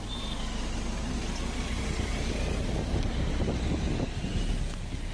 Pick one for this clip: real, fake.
real